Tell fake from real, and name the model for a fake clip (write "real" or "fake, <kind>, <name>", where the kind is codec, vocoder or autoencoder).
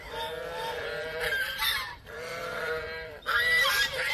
fake, vocoder, BigVGAN v2